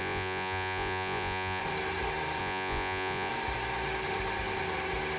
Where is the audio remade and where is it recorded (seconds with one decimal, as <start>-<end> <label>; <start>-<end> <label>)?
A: 0.0-1.6 remade; 1.6-2.4 recorded; 2.4-3.3 remade; 3.3-5.2 recorded